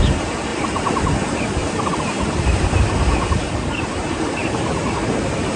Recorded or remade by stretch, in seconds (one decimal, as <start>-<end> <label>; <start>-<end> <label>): 0.0-5.6 recorded